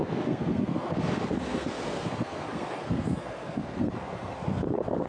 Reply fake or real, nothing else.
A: fake